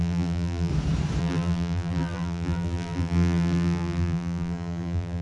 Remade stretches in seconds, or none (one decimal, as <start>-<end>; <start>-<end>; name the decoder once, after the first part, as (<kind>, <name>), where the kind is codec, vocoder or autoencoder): 0.0-0.7 (vocoder, BigVGAN v2); 1.2-5.2